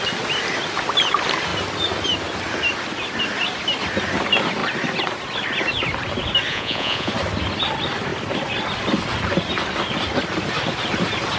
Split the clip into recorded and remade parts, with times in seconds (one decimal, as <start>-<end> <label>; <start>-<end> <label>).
0.0-6.5 recorded; 6.5-7.1 remade; 7.1-11.4 recorded